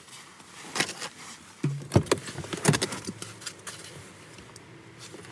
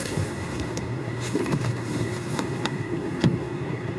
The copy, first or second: second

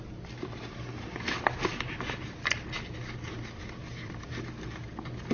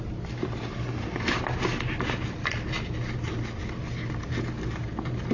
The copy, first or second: first